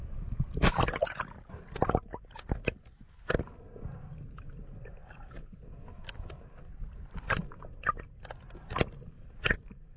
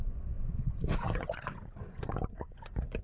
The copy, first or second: second